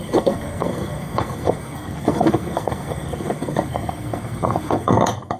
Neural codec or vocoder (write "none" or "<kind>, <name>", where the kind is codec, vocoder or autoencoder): codec, SNAC